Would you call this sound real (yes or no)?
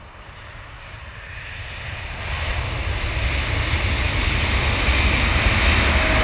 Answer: yes